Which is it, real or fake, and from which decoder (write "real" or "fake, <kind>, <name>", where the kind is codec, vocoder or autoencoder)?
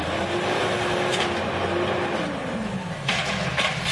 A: real